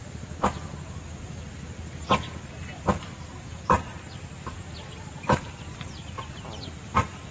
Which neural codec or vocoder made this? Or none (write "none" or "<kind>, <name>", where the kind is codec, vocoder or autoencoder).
none